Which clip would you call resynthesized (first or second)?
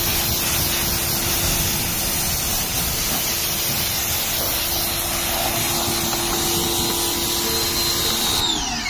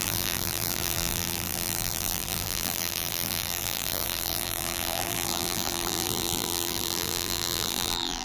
second